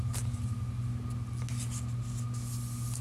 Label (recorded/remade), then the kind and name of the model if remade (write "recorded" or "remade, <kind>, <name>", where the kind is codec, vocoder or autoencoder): recorded